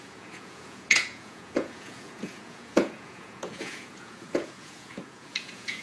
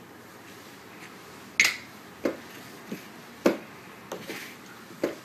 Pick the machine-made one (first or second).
first